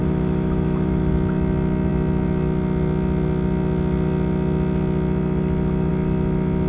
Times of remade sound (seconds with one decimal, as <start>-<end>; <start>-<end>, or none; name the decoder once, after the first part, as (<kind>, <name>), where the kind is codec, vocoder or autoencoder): 0.0-1.1 (autoencoder, DAC-VAE)